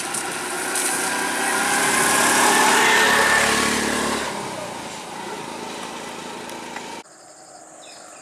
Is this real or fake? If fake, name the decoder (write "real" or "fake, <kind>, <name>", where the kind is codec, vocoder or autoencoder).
real